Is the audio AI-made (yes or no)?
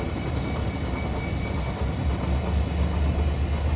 no